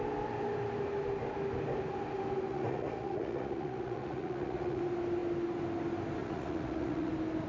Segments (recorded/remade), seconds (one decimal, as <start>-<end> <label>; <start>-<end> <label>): 0.0-2.5 recorded; 2.5-4.8 remade; 4.8-6.2 recorded; 6.2-7.1 remade; 7.1-7.5 recorded